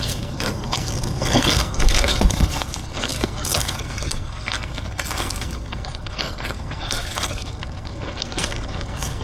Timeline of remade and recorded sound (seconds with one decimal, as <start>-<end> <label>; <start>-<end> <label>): 0.0-9.2 remade